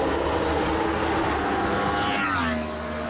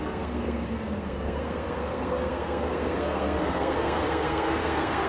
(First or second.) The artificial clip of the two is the second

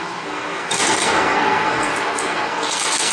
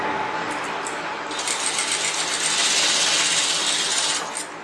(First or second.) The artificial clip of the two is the first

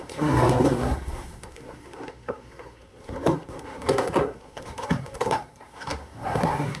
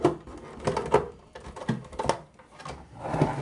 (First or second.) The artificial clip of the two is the first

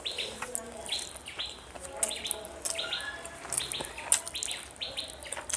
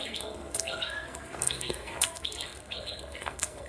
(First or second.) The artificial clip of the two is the second